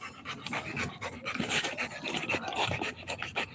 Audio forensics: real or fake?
real